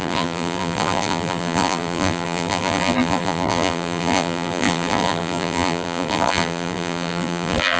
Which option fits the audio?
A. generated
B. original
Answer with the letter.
A